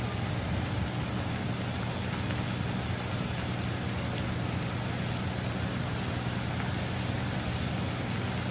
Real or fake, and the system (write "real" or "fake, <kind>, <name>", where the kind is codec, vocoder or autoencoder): real